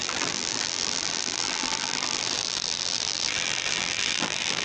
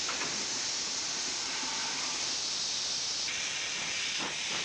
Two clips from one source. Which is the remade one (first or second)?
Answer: first